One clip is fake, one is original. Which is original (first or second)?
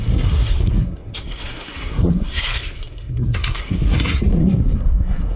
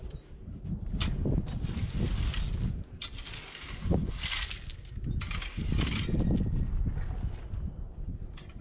second